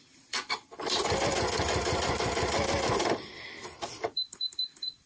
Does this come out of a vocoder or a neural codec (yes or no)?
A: yes